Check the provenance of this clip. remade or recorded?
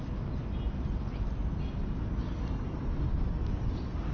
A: recorded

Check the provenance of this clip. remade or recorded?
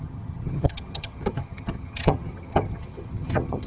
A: remade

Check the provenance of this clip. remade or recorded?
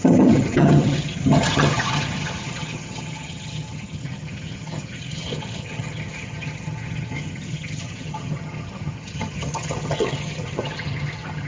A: remade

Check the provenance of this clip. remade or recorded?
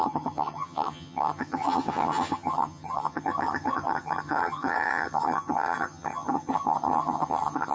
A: remade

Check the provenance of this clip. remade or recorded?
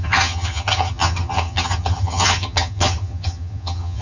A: remade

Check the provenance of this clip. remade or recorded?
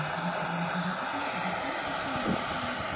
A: recorded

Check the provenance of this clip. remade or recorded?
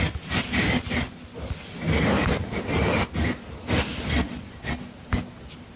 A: recorded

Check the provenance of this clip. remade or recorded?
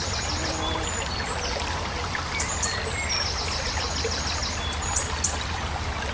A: recorded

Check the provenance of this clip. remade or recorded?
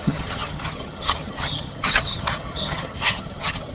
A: remade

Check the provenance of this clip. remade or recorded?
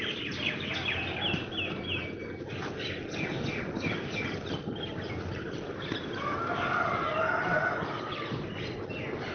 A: recorded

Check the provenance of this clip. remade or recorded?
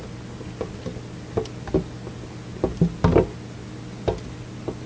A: recorded